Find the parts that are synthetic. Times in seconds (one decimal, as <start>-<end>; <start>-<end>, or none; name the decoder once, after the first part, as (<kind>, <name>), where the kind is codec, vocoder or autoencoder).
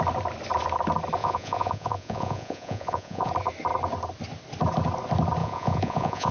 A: 1.2-3.3 (vocoder, Vocos); 5.4-6.3